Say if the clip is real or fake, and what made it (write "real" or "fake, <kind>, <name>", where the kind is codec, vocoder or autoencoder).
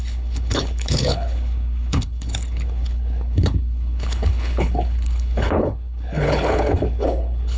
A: fake, codec, HILCodec